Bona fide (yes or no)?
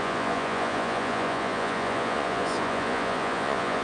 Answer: no